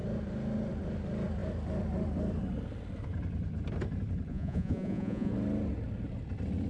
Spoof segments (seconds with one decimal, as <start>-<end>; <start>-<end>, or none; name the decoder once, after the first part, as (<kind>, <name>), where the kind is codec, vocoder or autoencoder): 4.3-5.3 (vocoder, Vocos)